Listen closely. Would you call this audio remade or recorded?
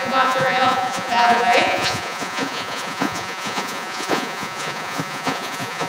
remade